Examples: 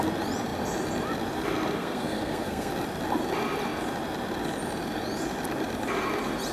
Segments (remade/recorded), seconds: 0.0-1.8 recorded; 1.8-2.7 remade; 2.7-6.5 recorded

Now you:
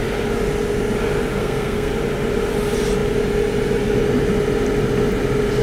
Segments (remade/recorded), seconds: 0.0-1.4 recorded; 1.4-1.9 remade; 1.9-5.6 recorded

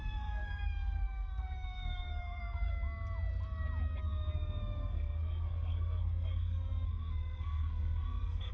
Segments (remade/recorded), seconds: 0.0-2.7 remade; 2.7-4.0 recorded; 4.0-8.5 remade

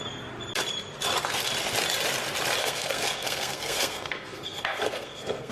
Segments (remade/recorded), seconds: 0.0-2.6 recorded; 2.6-5.5 remade

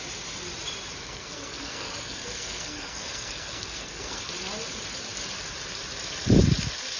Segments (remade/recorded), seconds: 0.0-1.0 recorded; 1.0-4.3 remade; 4.3-7.0 recorded

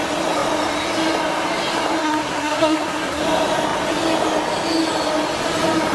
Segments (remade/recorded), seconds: 0.0-2.0 recorded; 2.0-3.2 remade; 3.2-5.9 recorded